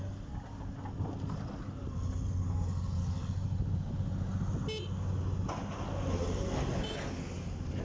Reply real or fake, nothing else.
real